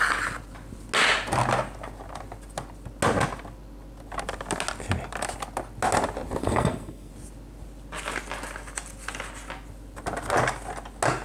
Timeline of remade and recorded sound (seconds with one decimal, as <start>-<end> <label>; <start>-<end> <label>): 0.0-6.4 recorded; 6.4-7.1 remade; 7.1-11.2 recorded